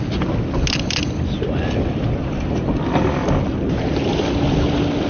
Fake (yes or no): no